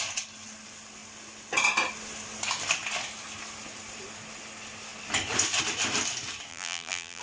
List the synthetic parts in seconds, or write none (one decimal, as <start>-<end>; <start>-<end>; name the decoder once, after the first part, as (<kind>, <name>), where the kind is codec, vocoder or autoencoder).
6.5-7.2 (vocoder, BigVGAN v2)